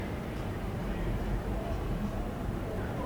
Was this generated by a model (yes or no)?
yes